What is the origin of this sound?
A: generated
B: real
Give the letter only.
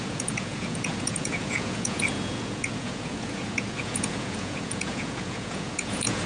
A